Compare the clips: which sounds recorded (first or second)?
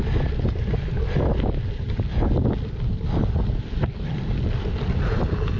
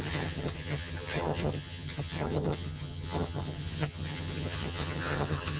first